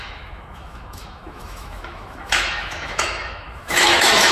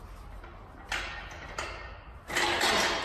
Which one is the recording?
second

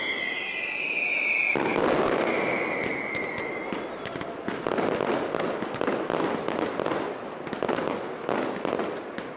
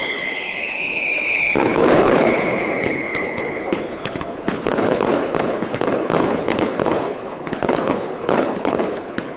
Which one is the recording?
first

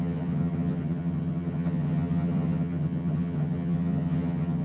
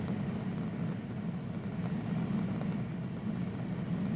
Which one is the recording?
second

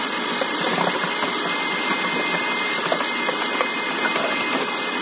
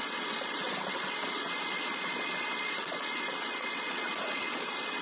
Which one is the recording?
first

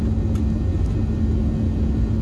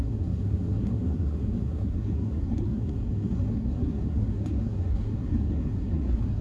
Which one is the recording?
first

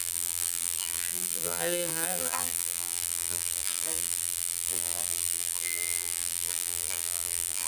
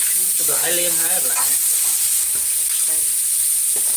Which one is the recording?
second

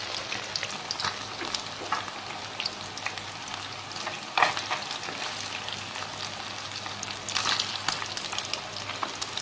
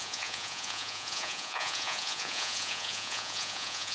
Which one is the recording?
first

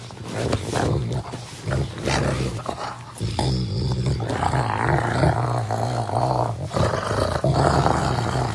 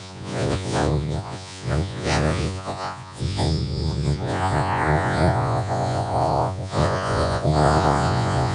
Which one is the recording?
first